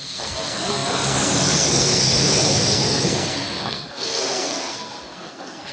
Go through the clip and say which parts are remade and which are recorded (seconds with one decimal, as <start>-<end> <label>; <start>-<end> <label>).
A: 0.0-5.7 remade